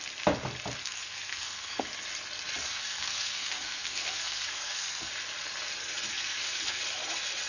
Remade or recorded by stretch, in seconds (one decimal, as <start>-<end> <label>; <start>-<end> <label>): 0.0-0.8 recorded; 0.8-1.8 remade; 1.8-2.7 recorded; 2.7-5.1 remade; 5.1-6.1 recorded; 6.1-6.8 remade; 6.8-7.5 recorded